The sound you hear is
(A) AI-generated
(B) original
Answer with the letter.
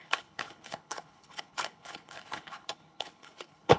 A